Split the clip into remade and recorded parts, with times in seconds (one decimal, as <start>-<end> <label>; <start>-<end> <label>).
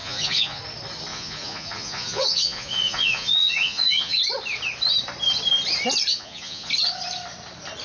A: 0.0-0.6 remade; 0.6-1.1 recorded; 1.1-4.2 remade; 4.2-6.1 recorded; 6.1-6.7 remade; 6.7-7.8 recorded